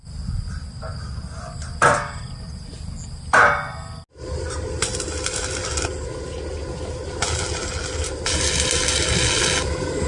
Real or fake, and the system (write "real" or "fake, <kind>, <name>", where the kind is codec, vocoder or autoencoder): real